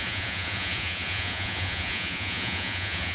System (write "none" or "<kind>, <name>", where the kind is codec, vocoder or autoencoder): vocoder, Vocos